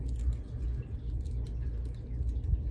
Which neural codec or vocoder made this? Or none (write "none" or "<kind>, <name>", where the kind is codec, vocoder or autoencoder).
none